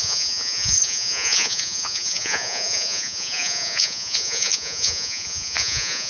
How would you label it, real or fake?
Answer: fake